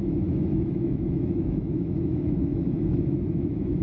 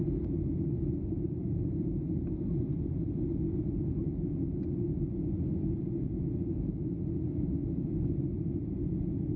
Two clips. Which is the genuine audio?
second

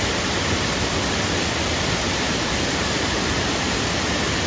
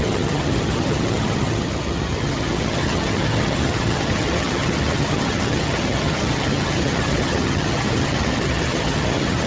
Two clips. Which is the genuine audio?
first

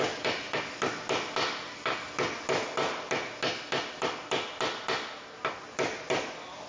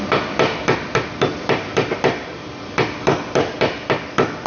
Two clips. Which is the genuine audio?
first